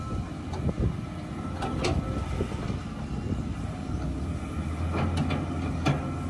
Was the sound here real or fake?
real